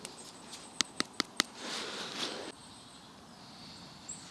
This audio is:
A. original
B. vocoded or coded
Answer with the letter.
A